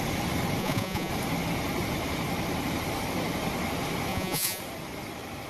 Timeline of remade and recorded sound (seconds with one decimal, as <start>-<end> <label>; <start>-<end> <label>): 0.0-0.6 recorded; 0.6-1.1 remade; 1.1-4.1 recorded; 4.1-4.6 remade; 4.6-5.5 recorded